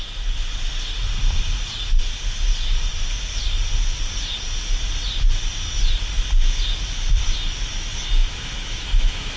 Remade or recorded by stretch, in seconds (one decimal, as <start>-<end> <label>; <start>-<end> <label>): 0.0-8.2 recorded; 8.2-9.4 remade